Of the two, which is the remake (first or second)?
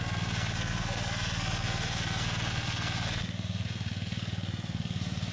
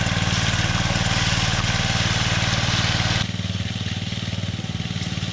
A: first